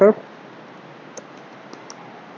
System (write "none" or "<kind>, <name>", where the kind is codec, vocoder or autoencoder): none